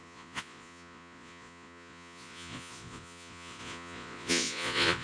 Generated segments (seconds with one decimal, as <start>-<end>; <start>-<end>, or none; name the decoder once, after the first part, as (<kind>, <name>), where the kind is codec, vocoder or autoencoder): 0.0-5.0 (vocoder, Vocos)